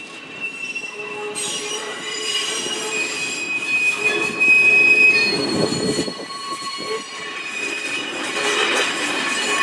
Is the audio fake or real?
fake